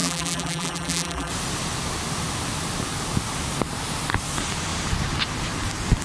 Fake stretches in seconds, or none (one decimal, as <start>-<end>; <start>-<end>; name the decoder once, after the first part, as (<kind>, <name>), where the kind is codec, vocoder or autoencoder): 0.0-1.3 (vocoder, BigVGAN v2)